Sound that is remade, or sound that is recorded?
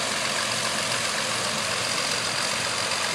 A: recorded